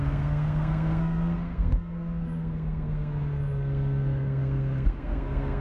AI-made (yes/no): yes